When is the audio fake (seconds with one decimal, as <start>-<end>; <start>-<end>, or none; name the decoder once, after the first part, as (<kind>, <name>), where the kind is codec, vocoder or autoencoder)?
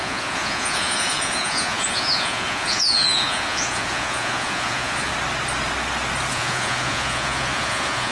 0.0-5.1 (vocoder, Vocos); 6.3-8.1